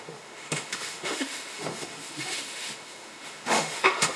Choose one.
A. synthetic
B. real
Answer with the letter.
A